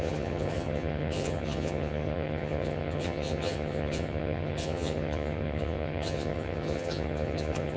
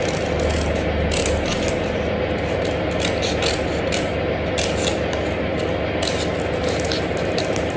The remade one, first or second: first